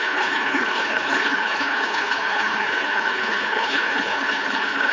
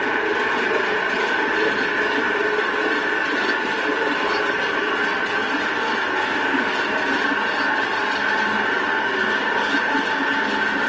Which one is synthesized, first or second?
first